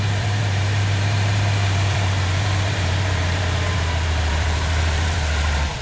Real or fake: fake